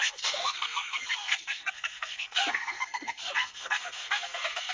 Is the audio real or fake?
fake